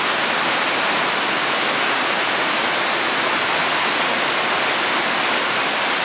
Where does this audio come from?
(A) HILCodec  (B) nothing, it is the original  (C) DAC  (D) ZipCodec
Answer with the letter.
B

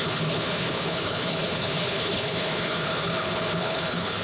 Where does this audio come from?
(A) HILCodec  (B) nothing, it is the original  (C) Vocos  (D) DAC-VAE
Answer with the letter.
A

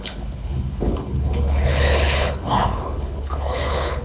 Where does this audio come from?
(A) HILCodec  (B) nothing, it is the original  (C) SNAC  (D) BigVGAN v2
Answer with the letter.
A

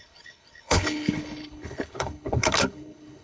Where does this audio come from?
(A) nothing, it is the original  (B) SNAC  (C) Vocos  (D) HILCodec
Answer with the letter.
D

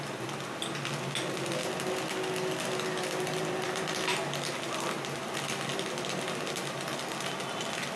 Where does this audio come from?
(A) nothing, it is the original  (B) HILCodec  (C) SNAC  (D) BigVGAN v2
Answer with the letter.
A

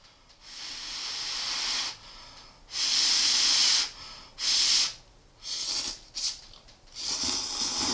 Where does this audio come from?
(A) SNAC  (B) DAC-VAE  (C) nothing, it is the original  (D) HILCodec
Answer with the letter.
C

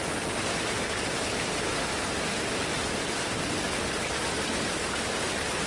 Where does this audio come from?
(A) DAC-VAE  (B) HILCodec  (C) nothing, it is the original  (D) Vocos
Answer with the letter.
C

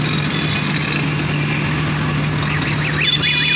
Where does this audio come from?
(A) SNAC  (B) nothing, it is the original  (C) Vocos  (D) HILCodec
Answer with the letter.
B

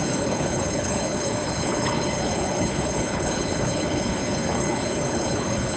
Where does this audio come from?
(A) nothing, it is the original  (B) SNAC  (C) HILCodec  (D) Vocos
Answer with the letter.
C